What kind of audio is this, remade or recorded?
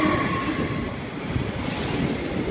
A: recorded